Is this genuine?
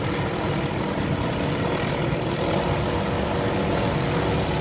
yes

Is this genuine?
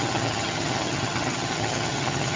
no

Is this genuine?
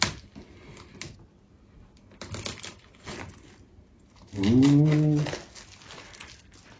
yes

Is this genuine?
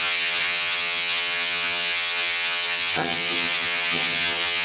no